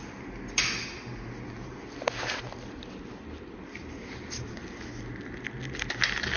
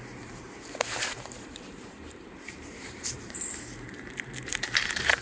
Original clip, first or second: first